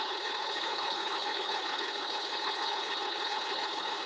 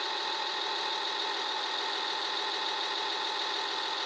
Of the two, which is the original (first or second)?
second